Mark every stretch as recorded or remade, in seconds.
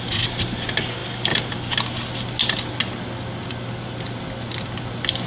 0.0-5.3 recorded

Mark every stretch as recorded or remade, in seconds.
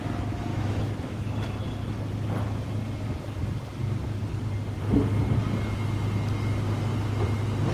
0.0-0.5 recorded; 0.5-1.3 remade; 1.3-7.7 recorded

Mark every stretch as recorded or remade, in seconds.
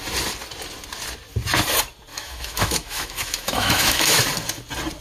0.0-2.1 recorded; 2.1-4.2 remade; 4.2-5.0 recorded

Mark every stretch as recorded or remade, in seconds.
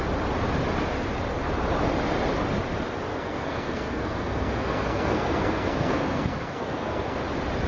0.0-3.1 recorded; 3.1-7.2 remade; 7.2-7.7 recorded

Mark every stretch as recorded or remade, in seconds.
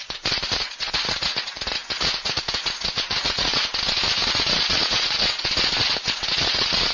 0.0-6.9 remade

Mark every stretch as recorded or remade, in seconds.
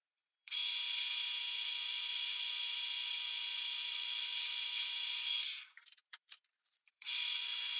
0.0-0.6 remade; 0.6-1.5 recorded; 1.5-7.8 remade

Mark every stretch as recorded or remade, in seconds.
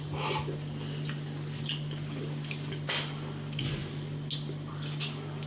0.0-5.5 recorded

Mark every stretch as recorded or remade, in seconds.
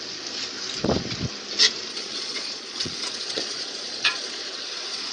0.0-1.9 recorded; 1.9-5.1 remade